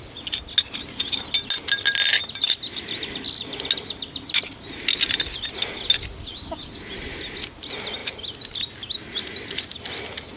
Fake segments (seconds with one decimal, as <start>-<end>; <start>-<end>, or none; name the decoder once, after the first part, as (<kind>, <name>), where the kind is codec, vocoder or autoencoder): none